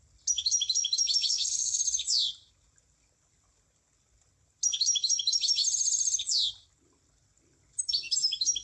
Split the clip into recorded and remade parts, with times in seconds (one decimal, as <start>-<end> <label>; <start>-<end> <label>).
0.0-1.3 recorded; 1.3-1.8 remade; 1.8-8.6 recorded